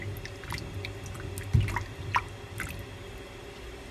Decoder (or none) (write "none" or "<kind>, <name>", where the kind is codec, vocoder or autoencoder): none